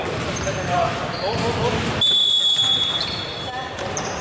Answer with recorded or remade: recorded